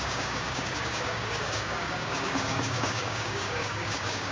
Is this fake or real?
fake